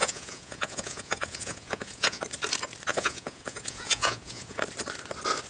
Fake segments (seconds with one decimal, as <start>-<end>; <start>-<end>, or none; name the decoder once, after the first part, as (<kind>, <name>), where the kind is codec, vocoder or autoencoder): 0.0-2.2 (vocoder, Vocos); 2.9-4.6